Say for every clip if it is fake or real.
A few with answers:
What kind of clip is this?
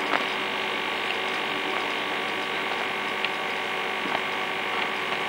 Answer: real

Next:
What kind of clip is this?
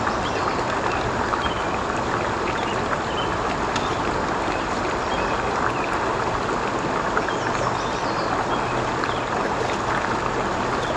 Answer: real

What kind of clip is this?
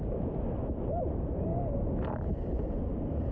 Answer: fake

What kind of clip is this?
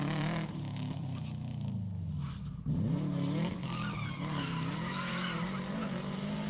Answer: real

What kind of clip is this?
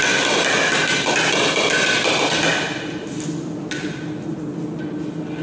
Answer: real